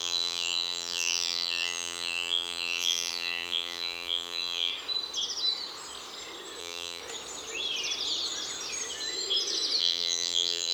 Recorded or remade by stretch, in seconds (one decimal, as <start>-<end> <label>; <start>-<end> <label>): 0.0-4.7 remade; 4.7-6.6 recorded; 6.6-7.0 remade; 7.0-9.8 recorded; 9.8-10.7 remade